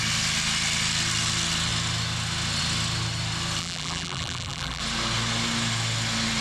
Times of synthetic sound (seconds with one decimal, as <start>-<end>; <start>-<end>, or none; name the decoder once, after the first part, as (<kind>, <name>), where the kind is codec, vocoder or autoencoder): 3.6-4.8 (vocoder, BigVGAN v2)